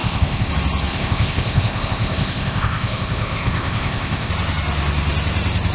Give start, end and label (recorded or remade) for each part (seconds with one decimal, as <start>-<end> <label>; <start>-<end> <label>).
0.0-0.5 remade; 0.5-0.9 recorded; 0.9-4.3 remade; 4.3-5.7 recorded